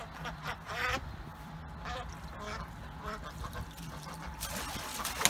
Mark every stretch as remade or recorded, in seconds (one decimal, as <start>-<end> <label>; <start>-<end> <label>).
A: 0.0-5.3 recorded